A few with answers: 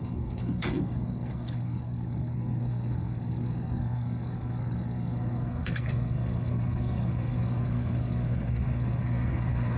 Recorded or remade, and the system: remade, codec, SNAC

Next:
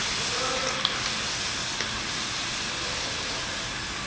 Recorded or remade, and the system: recorded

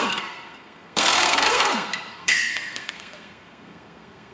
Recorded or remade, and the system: remade, codec, SNAC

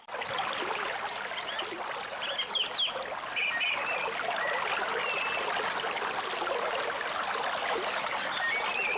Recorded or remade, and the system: recorded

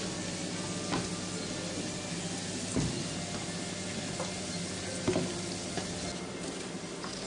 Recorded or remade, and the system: recorded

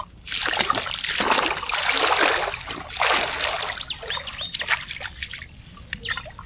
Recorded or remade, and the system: recorded